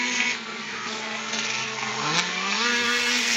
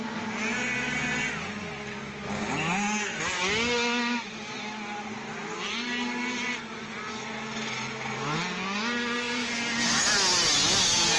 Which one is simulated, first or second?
first